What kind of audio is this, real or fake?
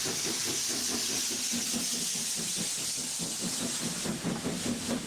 real